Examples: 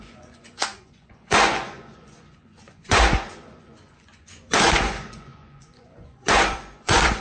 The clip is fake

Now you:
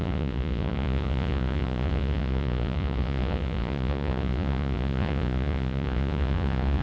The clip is fake